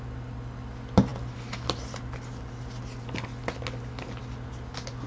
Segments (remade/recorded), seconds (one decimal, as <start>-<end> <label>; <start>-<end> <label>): 0.0-5.1 recorded